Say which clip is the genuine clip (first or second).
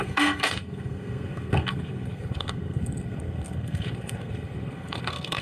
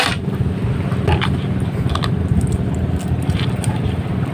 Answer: second